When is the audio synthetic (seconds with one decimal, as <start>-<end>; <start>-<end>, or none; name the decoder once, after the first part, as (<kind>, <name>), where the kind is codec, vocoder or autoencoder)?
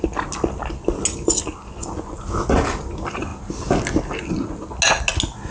none